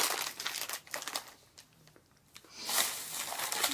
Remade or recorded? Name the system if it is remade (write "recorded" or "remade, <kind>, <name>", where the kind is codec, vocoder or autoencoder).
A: recorded